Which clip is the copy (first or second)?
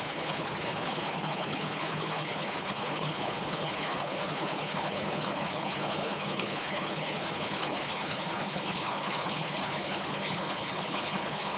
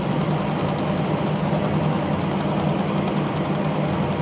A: first